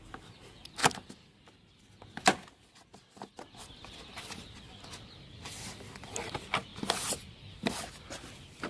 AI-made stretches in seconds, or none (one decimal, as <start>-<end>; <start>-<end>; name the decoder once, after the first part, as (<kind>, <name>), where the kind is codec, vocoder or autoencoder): none